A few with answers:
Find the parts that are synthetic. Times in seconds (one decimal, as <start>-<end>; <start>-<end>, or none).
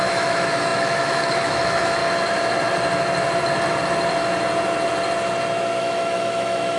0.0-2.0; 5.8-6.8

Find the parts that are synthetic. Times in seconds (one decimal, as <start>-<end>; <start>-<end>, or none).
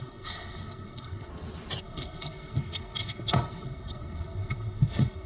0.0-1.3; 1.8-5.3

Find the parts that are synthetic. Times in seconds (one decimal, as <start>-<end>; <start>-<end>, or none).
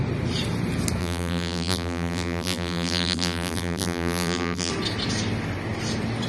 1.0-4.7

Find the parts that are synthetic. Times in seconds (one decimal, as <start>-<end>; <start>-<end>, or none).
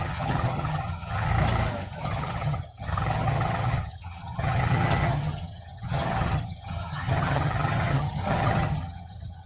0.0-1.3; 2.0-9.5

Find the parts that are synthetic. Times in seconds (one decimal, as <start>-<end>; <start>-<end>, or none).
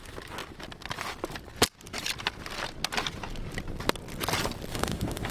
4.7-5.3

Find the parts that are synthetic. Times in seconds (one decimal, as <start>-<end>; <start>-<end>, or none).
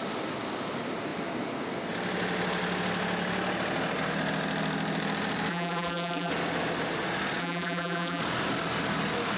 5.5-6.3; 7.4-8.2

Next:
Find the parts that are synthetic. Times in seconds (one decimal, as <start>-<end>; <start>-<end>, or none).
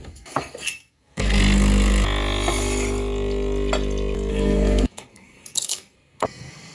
0.0-1.4; 4.3-6.7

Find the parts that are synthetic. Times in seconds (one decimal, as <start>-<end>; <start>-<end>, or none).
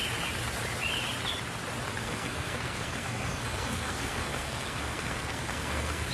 2.0-6.1